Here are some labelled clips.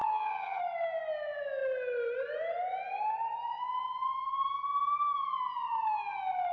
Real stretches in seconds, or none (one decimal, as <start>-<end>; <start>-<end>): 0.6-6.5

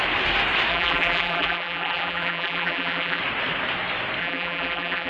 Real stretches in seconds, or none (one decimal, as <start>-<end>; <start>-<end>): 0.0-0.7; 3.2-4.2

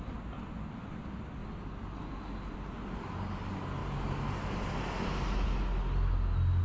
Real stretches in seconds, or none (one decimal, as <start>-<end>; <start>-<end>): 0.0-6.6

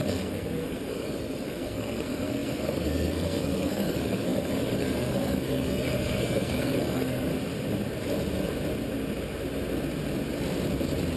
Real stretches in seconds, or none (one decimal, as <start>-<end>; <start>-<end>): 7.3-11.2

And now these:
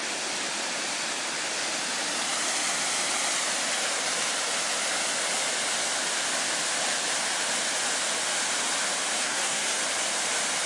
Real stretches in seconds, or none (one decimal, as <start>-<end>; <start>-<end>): 0.0-9.2; 9.8-10.7